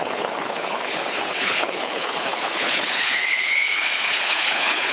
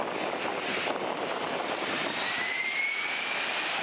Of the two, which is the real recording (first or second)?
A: second